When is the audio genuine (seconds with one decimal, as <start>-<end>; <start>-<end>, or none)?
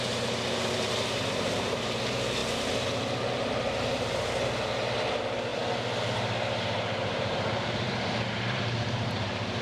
2.4-3.8; 5.5-6.1